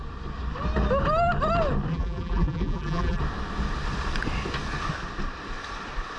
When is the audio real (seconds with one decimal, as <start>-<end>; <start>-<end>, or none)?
0.0-1.9; 3.2-6.2